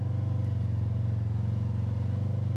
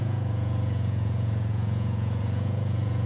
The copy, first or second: second